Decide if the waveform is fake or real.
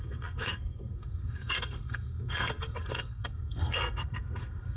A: fake